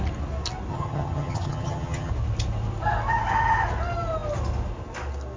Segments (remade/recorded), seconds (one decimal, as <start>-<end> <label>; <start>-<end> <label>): 0.0-0.7 recorded; 0.7-2.1 remade; 2.1-5.4 recorded